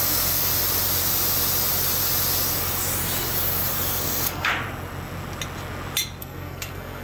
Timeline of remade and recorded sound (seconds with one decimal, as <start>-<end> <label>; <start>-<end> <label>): 0.0-0.5 remade; 0.5-3.9 recorded; 3.9-4.5 remade; 4.5-6.2 recorded; 6.2-7.0 remade